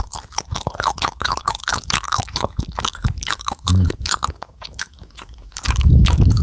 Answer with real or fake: fake